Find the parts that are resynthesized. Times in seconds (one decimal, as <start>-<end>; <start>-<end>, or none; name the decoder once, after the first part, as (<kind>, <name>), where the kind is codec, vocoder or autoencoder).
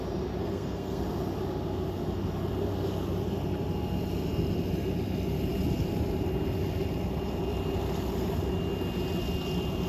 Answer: 0.4-1.0 (codec, SNAC)